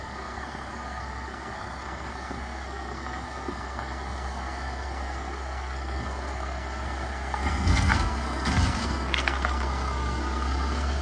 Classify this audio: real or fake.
fake